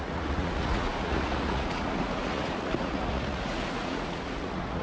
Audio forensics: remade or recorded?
remade